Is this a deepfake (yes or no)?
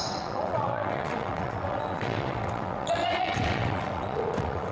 yes